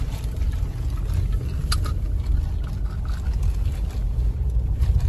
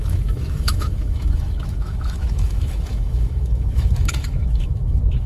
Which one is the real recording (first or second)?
first